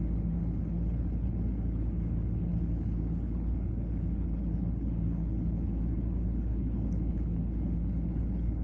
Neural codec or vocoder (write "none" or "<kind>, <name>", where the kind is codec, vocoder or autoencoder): codec, HILCodec